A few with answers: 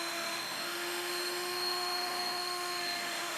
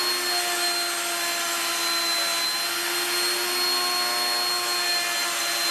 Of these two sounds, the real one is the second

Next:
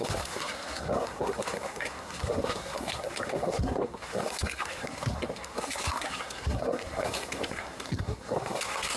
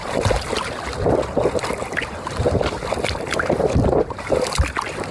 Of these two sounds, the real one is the second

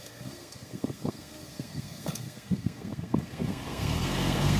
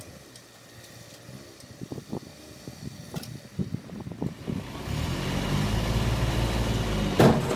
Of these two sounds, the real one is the second